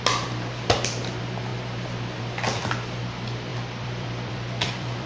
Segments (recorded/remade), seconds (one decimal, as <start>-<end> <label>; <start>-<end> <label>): 0.0-3.5 recorded; 3.5-5.1 remade